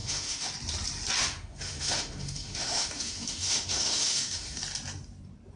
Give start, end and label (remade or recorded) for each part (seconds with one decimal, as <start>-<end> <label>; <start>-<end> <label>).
0.0-0.5 remade; 0.5-1.2 recorded; 1.2-4.6 remade; 4.6-5.6 recorded

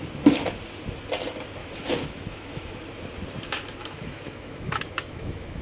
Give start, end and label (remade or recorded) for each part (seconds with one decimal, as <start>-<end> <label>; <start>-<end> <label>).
0.0-1.6 recorded; 1.6-2.7 remade; 2.7-3.8 recorded; 3.8-5.6 remade